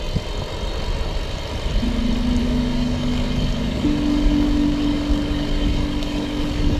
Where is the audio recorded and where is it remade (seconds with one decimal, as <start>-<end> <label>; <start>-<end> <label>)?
0.0-2.4 recorded; 2.4-6.8 remade